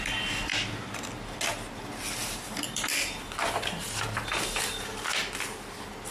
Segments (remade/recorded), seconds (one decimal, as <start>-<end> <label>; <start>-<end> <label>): 0.0-0.5 remade; 0.5-1.8 recorded; 1.8-6.1 remade